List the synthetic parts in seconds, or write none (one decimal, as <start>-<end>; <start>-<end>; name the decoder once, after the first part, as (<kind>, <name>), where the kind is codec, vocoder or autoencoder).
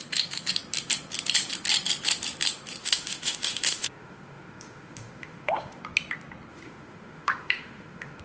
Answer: 2.8-5.8 (autoencoder, DAC-VAE); 6.5-8.2